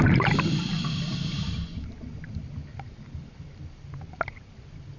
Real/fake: real